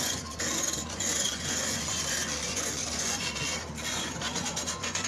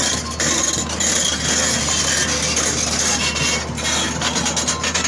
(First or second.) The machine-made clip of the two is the first